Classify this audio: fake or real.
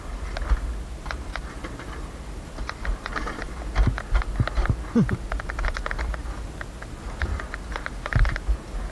real